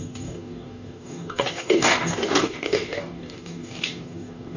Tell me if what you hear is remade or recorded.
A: remade